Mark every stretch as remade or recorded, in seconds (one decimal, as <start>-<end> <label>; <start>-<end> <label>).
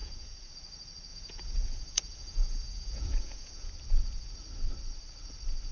0.0-0.5 remade; 0.5-1.1 recorded; 1.1-3.7 remade; 3.7-5.7 recorded